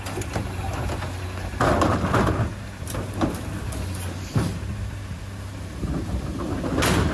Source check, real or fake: real